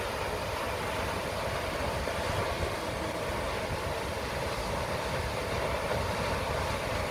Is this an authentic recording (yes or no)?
yes